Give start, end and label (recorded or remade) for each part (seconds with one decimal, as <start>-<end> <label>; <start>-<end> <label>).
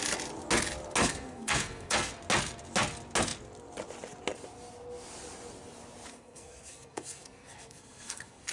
0.0-1.0 recorded; 1.0-2.1 remade; 2.1-6.1 recorded; 6.1-8.5 remade